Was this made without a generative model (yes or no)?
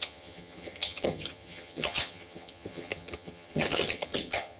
no